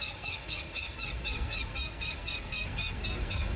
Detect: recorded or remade remade